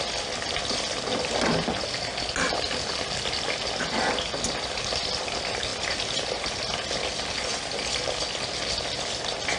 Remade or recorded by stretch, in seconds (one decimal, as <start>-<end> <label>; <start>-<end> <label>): 0.0-9.6 recorded